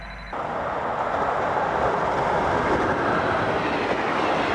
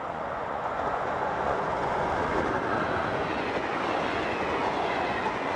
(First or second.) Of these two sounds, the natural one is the first